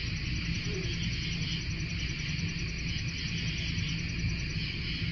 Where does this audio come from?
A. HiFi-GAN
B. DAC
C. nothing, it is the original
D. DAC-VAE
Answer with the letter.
C